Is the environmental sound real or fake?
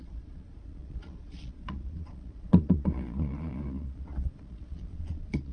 fake